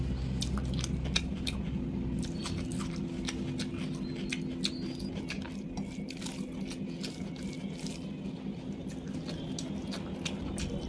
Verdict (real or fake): real